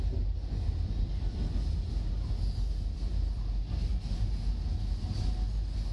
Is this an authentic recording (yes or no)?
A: yes